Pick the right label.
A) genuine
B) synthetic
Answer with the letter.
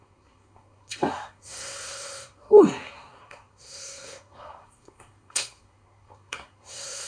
B